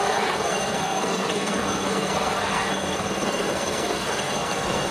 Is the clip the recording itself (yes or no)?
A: no